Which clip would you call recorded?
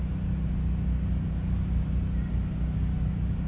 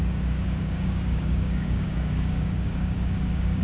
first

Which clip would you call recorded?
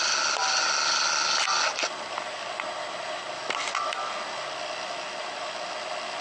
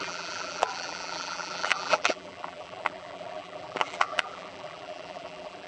first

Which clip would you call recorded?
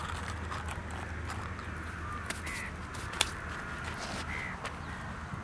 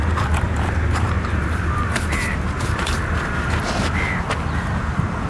first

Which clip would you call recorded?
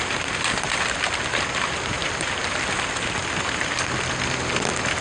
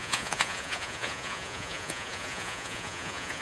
first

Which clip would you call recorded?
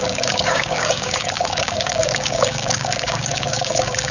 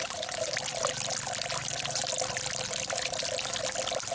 second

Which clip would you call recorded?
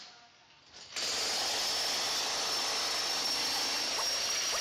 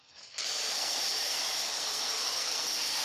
first